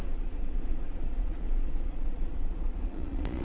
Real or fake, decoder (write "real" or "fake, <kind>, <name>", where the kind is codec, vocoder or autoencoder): fake, vocoder, Vocos